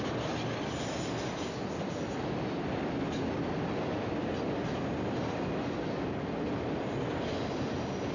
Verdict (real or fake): real